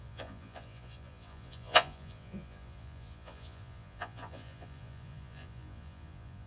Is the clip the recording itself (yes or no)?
no